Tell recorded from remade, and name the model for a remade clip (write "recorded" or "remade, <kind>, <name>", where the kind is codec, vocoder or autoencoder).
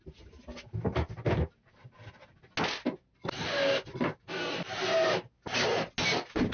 recorded